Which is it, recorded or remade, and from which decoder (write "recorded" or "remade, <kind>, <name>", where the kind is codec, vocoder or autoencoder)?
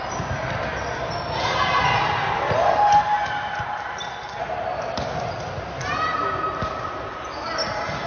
recorded